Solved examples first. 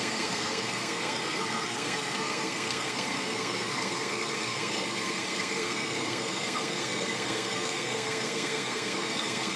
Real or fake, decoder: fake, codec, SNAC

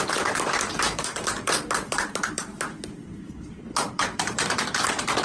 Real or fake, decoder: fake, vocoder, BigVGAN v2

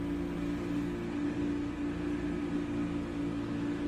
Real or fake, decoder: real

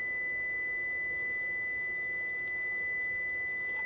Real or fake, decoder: real